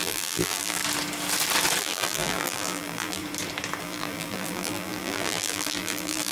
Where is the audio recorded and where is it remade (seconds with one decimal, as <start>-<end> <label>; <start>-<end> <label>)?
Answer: 0.0-0.8 remade; 0.8-1.8 recorded; 1.8-3.2 remade; 3.2-3.8 recorded; 3.8-6.3 remade